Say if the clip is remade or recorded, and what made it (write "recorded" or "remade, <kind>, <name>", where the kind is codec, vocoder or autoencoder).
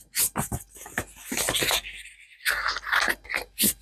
recorded